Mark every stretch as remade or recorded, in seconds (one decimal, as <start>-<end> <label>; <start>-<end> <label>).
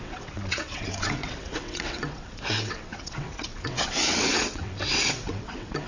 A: 0.0-5.9 remade